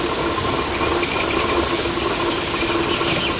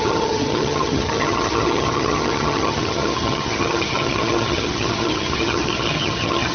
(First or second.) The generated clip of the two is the second